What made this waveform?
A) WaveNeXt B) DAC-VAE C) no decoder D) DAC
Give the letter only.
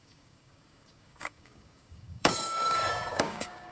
D